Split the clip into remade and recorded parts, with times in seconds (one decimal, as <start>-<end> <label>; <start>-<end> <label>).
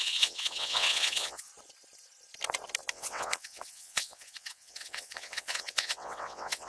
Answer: 0.0-1.5 remade; 1.5-2.9 recorded; 2.9-6.7 remade